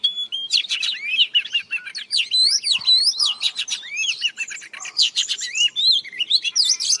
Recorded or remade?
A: recorded